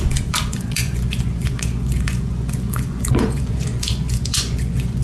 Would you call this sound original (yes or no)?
no